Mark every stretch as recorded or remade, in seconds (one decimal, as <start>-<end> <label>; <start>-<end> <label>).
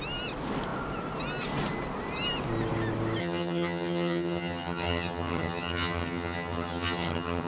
0.0-3.2 recorded; 3.2-7.5 remade